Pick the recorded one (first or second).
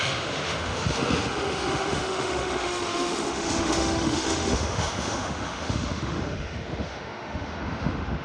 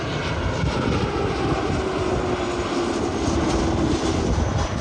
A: second